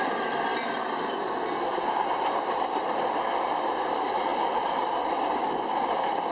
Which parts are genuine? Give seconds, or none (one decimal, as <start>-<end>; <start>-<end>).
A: 0.0-6.3